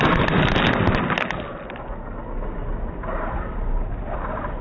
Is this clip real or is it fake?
real